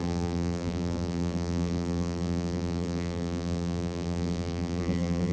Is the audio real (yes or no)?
no